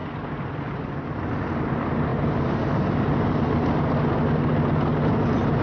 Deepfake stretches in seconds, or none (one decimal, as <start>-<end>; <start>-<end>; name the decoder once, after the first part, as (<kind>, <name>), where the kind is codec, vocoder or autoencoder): 2.1-2.8 (vocoder, BigVGAN v2); 4.9-5.6